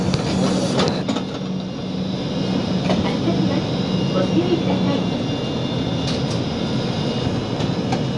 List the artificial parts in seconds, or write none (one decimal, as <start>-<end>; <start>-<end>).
none